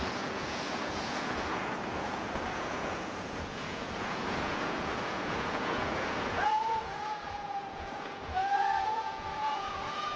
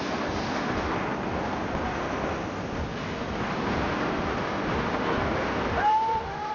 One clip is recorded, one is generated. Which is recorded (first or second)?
second